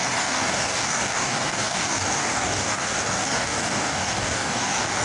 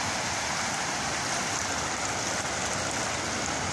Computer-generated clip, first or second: first